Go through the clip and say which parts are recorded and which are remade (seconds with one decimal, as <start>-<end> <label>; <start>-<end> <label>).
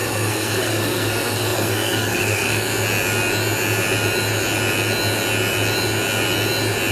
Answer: 0.0-2.7 remade; 2.7-6.9 recorded